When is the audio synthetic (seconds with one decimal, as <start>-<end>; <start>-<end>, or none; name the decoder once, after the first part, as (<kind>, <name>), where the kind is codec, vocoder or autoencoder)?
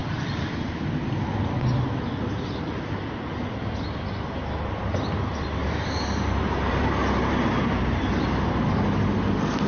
5.6-8.0 (vocoder, BigVGAN v2)